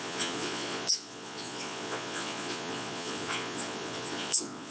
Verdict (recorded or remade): remade